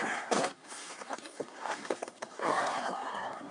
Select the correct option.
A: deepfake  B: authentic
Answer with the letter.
A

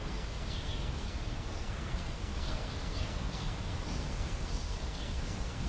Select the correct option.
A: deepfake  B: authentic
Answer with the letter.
A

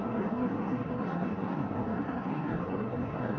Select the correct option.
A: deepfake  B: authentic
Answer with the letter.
A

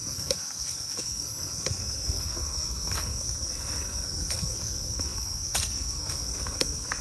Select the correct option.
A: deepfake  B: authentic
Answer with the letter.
A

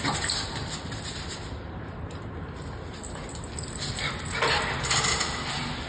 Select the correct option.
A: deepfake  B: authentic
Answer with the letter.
B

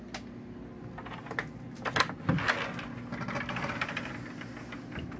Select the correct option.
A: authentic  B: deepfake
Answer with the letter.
A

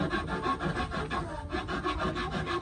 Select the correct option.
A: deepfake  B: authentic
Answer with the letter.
B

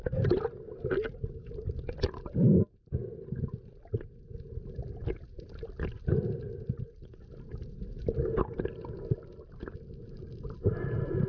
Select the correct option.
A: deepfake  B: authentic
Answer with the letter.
B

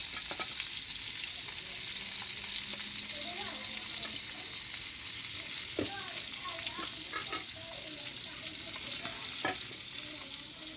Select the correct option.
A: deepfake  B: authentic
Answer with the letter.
B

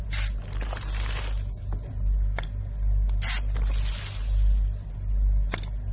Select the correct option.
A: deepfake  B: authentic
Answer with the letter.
B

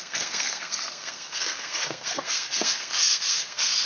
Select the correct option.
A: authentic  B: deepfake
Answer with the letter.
B